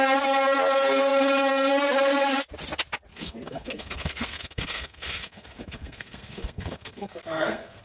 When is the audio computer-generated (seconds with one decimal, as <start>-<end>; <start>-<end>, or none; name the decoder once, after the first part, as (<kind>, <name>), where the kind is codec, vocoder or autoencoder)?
3.1-7.8 (codec, SNAC)